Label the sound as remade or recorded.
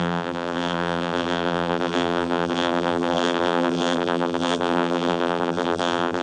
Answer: remade